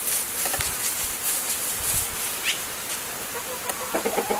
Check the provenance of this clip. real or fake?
fake